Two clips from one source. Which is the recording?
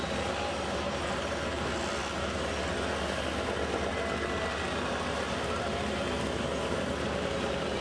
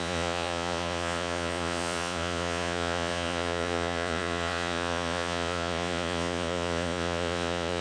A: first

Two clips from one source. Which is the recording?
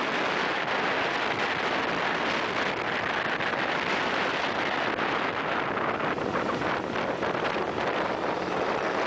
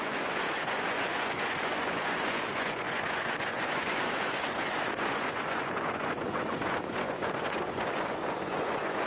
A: first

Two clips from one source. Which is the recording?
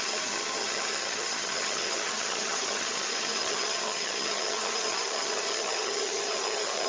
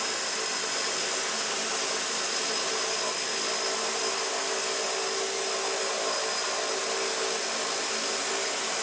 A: second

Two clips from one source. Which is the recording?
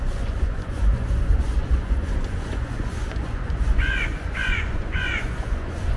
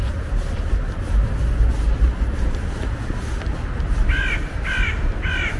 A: second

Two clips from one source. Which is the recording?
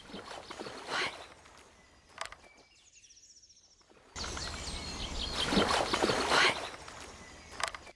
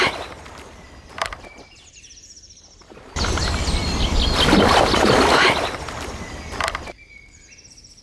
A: first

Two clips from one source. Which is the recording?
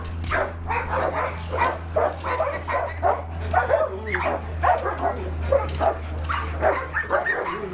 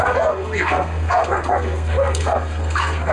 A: first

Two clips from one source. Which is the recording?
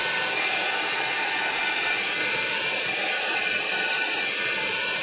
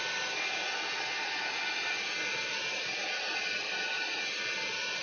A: second